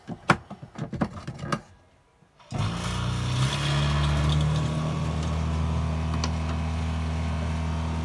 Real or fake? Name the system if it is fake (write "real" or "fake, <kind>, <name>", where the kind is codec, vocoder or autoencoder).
real